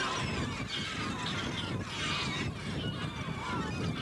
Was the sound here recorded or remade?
recorded